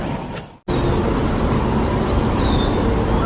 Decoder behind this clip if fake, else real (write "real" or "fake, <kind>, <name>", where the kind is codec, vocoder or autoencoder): real